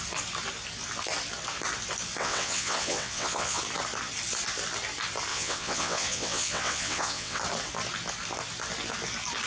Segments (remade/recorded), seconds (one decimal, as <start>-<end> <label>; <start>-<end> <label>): 0.0-2.2 recorded; 2.2-3.6 remade; 3.6-5.3 recorded; 5.3-7.4 remade; 7.4-9.5 recorded

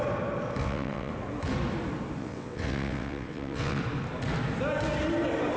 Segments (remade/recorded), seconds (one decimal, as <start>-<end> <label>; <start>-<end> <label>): 0.0-0.6 recorded; 0.6-1.1 remade; 1.1-2.2 recorded; 2.2-3.8 remade; 3.8-5.6 recorded

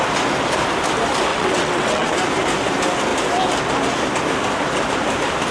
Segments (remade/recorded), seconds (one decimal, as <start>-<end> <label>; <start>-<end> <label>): 0.0-1.3 recorded; 1.3-2.1 remade; 2.1-5.5 recorded